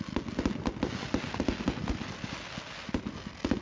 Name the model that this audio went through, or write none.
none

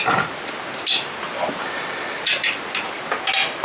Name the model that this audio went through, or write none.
none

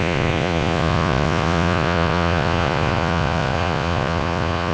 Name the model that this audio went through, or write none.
vocoder, Vocos